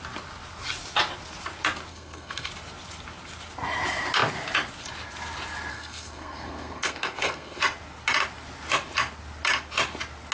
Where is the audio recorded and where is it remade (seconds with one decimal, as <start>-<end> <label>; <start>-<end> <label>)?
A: 0.0-1.9 recorded; 1.9-2.5 remade; 2.5-5.7 recorded; 5.7-7.6 remade; 7.6-10.3 recorded